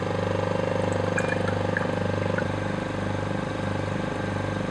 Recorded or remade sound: recorded